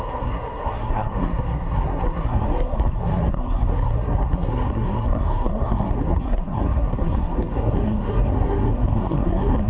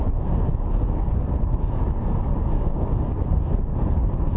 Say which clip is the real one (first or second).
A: second